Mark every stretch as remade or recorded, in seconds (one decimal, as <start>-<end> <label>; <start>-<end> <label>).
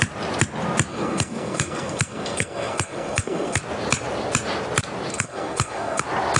0.0-0.9 recorded; 0.9-3.6 remade; 3.6-5.1 recorded; 5.1-6.0 remade; 6.0-6.4 recorded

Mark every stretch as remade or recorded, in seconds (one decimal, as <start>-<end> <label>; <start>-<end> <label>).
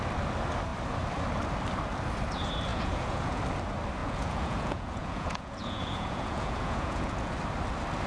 0.0-2.7 recorded; 2.7-3.4 remade; 3.4-4.0 recorded; 4.0-7.3 remade; 7.3-8.1 recorded